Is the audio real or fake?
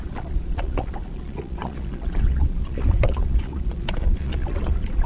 fake